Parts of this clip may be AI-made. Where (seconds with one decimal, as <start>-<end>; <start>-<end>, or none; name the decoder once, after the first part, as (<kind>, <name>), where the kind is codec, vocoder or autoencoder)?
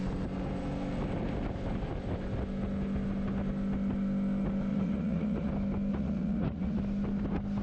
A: 4.7-5.5 (vocoder, Vocos); 5.9-6.8